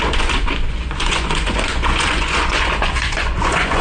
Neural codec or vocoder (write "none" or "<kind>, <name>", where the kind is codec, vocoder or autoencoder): vocoder, Vocos